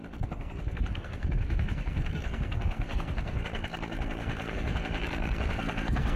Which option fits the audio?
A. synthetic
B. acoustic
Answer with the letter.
A